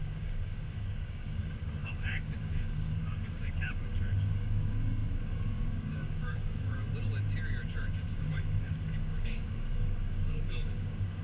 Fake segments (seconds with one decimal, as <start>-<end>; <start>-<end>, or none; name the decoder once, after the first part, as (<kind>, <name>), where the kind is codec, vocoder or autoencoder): 0.0-6.9 (codec, DAC); 7.7-11.2